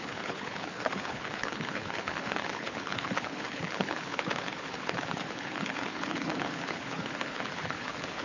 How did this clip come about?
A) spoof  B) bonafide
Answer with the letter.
A